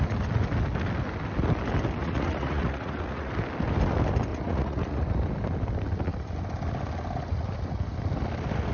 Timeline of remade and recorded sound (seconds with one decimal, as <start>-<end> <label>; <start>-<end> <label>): 0.0-2.0 recorded; 2.0-3.3 remade; 3.3-4.3 recorded; 4.3-5.1 remade; 5.1-8.7 recorded